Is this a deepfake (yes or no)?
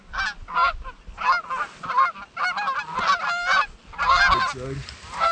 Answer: no